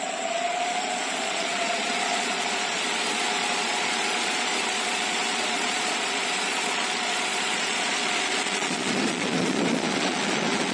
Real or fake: fake